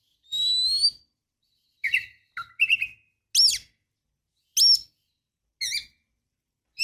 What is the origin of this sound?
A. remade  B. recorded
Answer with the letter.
B